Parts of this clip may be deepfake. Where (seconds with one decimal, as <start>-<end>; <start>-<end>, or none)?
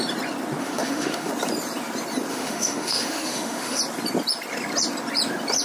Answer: 0.6-1.3; 2.3-3.8